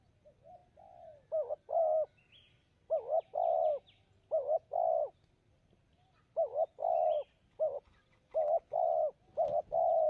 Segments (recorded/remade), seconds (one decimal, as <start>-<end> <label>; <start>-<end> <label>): 0.0-10.1 recorded